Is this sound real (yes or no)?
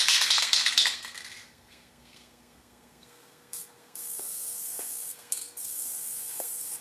no